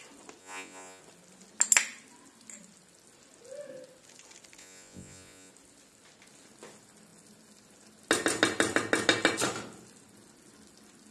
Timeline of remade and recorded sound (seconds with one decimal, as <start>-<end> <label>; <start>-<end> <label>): 0.0-0.4 recorded; 0.4-1.0 remade; 1.0-4.6 recorded; 4.6-5.5 remade; 5.5-11.1 recorded

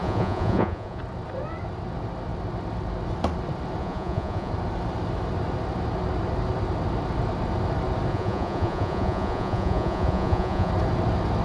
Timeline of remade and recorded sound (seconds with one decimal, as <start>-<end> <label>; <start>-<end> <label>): 0.0-1.0 remade; 1.0-3.8 recorded; 3.8-4.5 remade; 4.5-8.1 recorded; 8.1-10.7 remade; 10.7-11.4 recorded